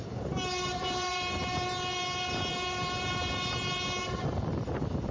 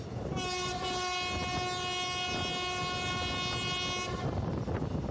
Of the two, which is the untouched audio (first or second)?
second